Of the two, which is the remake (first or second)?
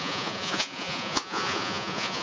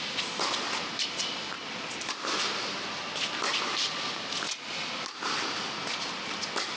first